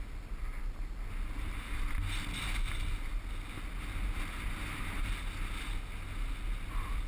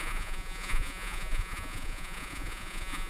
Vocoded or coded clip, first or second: second